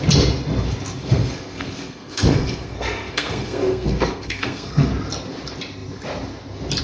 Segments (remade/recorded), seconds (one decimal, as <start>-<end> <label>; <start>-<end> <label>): 0.0-1.0 recorded; 1.0-4.9 remade; 4.9-6.8 recorded